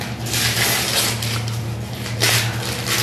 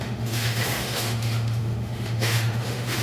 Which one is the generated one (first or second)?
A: second